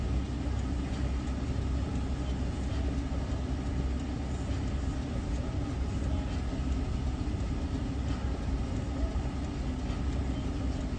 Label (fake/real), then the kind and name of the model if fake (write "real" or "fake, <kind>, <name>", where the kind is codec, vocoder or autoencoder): real